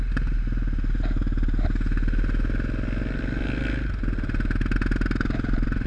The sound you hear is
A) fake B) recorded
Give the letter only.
B